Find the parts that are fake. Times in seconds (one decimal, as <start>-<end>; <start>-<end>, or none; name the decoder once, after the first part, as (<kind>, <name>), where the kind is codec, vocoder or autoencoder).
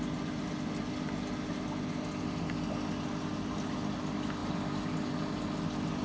none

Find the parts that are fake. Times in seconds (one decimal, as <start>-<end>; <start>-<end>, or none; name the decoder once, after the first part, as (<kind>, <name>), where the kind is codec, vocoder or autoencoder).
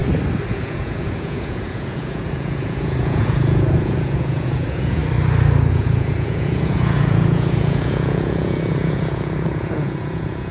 0.5-5.0 (vocoder, Vocos); 5.7-10.5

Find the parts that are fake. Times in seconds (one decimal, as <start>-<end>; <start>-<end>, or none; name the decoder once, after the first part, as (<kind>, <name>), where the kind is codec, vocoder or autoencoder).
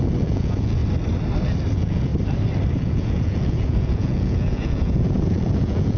0.0-0.8 (vocoder, Vocos); 1.7-2.1; 2.8-6.0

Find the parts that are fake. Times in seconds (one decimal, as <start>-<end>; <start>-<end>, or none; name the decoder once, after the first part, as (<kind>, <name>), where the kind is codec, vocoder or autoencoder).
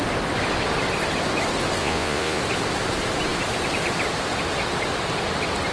1.8-2.4 (vocoder, Vocos)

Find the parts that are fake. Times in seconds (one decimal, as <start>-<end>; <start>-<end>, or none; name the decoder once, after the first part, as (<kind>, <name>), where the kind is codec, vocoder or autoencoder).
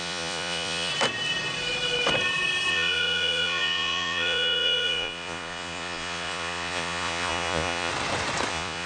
0.0-0.9 (vocoder, Vocos); 2.7-7.9; 8.5-8.9